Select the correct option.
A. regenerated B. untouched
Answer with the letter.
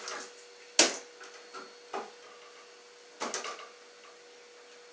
B